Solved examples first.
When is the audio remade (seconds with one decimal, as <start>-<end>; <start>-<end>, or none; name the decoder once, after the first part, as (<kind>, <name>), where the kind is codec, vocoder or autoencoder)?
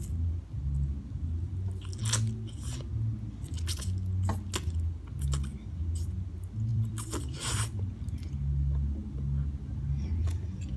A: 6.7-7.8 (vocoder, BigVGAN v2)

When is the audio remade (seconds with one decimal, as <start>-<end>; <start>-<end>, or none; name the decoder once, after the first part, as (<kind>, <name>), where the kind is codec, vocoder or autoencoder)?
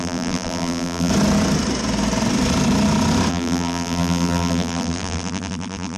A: 0.0-1.1 (vocoder, BigVGAN v2); 3.3-6.0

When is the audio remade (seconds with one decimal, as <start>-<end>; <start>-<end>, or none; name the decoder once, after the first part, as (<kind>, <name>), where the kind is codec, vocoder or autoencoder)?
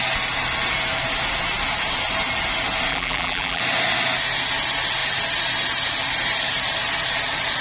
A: 2.9-3.6 (vocoder, BigVGAN v2)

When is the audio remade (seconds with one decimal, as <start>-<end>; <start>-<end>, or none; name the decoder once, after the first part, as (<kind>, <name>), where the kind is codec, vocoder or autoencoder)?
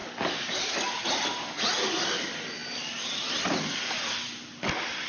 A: 2.6-3.2 (vocoder, BigVGAN v2)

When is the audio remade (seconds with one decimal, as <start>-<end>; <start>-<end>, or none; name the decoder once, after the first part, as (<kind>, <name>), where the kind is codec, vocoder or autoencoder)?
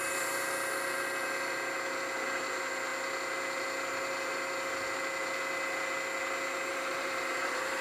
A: 6.7-7.8 (vocoder, BigVGAN v2)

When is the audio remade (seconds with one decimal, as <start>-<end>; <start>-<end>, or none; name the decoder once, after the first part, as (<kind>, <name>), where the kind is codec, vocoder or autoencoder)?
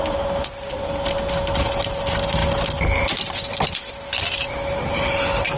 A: 1.4-2.0 (vocoder, BigVGAN v2); 2.4-5.6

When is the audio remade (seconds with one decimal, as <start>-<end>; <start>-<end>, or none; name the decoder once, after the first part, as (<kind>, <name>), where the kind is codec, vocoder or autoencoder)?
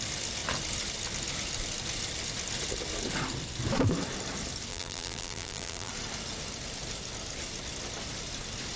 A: 4.7-5.9 (vocoder, BigVGAN v2)